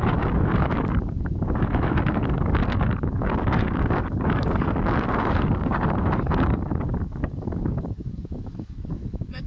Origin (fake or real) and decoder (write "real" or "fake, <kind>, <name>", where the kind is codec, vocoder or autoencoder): fake, codec, DAC